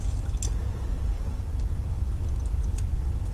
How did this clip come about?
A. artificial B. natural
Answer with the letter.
B